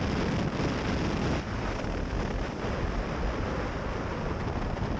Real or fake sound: real